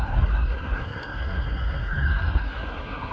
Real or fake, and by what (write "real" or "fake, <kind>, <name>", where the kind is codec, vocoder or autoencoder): fake, codec, SNAC